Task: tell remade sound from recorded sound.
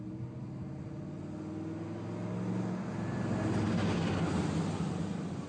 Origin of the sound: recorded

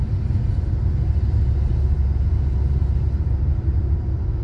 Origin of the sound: recorded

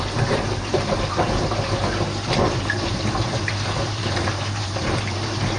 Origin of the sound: remade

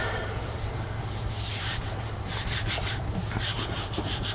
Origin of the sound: remade